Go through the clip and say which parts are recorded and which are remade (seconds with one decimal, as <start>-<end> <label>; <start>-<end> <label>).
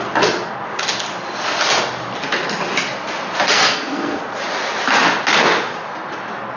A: 0.0-3.5 recorded; 3.5-4.2 remade; 4.2-6.6 recorded